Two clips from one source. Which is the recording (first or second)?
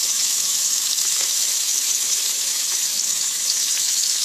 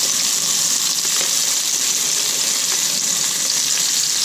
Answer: second